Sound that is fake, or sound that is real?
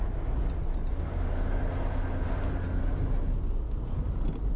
real